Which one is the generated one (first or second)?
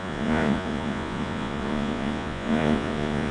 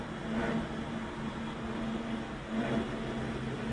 first